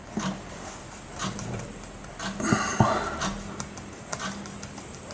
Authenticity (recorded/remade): recorded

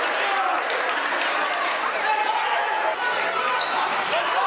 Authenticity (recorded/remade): recorded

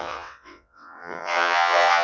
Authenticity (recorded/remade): remade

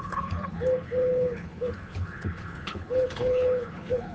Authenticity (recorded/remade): remade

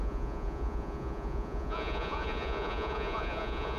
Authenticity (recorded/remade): remade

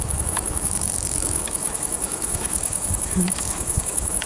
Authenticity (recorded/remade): remade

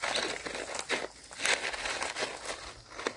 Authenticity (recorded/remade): recorded